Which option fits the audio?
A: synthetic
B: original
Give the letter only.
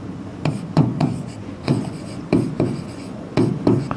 A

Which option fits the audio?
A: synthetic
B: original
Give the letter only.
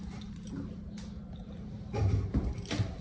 B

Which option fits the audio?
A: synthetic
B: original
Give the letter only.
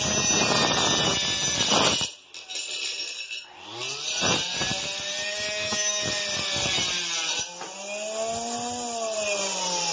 B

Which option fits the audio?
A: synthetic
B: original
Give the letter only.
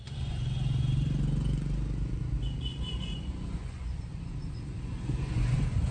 A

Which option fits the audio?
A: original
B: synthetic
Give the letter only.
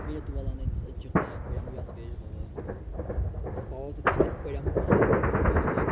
A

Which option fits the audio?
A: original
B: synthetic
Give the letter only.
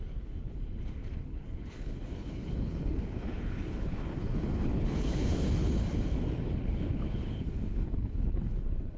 B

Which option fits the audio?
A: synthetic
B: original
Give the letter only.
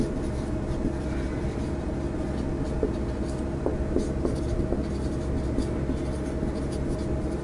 B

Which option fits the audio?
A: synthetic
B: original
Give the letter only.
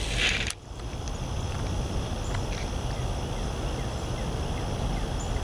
B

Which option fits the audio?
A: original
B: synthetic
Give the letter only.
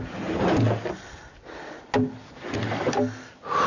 A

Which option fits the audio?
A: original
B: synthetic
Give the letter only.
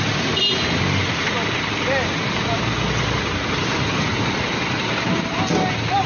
A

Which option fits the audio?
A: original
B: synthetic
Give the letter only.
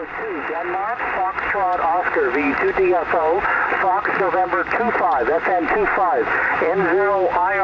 A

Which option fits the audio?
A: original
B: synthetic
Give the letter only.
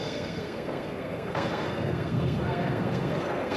B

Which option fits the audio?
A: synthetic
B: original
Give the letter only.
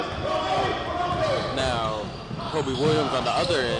B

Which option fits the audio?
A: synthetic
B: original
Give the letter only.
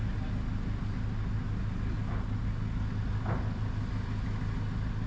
B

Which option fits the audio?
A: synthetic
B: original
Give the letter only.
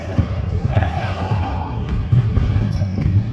A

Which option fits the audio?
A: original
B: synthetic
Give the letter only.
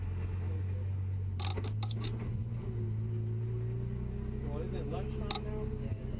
A